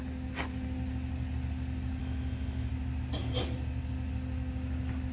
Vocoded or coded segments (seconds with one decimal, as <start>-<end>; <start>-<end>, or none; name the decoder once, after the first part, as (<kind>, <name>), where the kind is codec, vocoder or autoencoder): 2.0-2.7 (autoencoder, DAC-VAE)